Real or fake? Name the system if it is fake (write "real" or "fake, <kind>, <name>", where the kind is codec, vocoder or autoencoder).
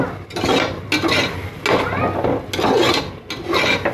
real